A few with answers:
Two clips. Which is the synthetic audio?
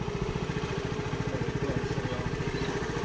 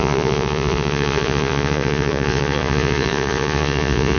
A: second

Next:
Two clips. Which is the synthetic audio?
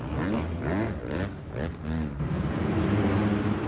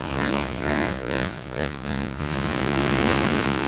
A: second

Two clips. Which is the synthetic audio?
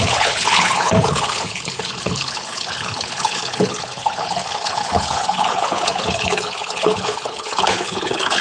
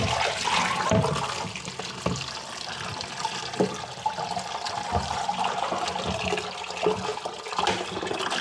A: first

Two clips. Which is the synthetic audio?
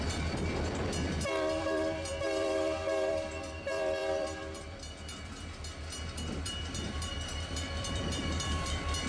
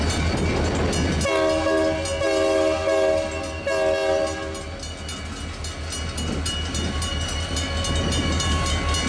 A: first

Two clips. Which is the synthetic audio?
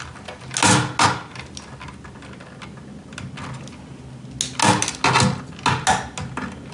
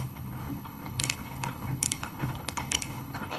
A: second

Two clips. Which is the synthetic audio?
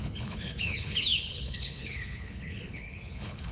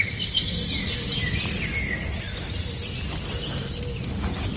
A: first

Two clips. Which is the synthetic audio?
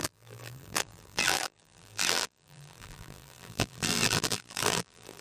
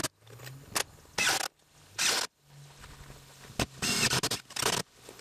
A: first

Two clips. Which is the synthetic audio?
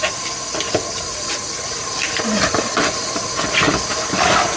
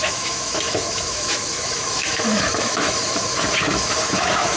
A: second